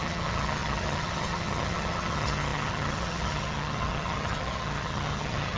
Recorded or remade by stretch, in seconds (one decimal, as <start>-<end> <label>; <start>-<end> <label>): 0.0-5.6 remade